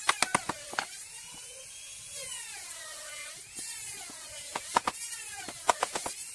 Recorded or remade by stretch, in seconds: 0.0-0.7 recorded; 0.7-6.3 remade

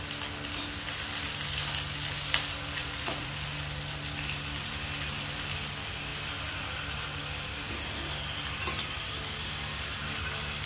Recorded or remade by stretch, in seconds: 0.0-2.8 recorded; 2.8-3.3 remade; 3.3-10.7 recorded

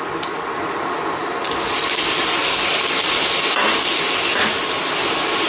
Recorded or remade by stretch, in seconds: 0.0-5.5 recorded

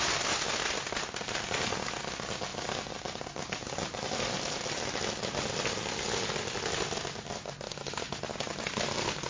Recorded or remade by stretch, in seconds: 0.0-9.3 recorded

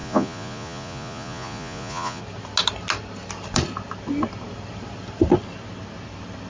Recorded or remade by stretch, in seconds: 0.0-2.2 remade; 2.2-6.5 recorded

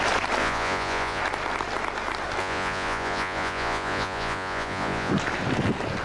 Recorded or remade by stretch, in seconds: 0.0-0.4 recorded; 0.4-1.2 remade; 1.2-2.4 recorded; 2.4-5.1 remade; 5.1-6.0 recorded